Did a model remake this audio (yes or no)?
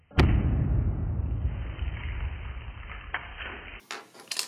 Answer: no